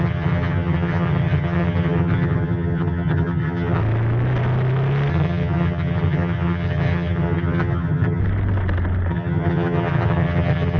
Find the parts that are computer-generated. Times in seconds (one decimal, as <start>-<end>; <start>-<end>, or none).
0.0-3.8; 5.1-8.2; 9.1-10.8